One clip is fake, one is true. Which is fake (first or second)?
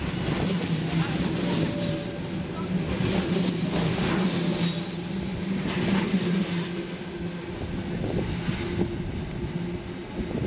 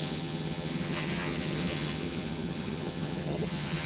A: second